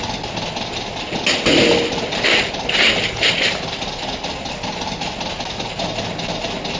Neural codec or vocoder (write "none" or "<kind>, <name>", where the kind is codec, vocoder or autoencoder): none